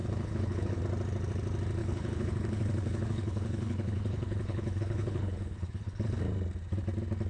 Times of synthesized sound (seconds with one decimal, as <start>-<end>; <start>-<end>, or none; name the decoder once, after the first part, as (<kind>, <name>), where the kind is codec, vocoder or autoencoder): 0.0-0.8 (codec, HILCodec); 1.8-6.2